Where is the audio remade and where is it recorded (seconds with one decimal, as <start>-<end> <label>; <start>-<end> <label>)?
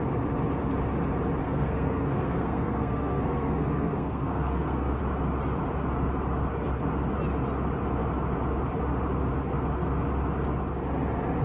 0.0-1.4 recorded; 1.4-5.0 remade; 5.0-11.4 recorded